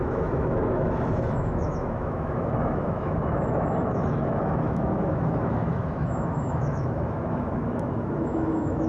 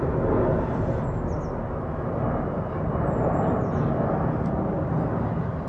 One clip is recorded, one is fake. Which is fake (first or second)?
first